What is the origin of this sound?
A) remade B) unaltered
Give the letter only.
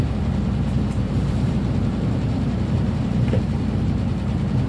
A